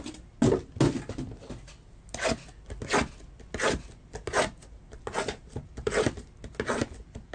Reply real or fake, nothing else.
real